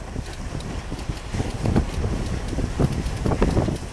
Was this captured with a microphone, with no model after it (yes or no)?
yes